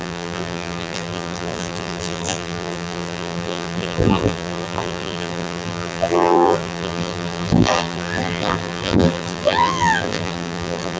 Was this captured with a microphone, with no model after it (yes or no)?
no